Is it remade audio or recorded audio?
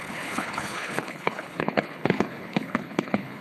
remade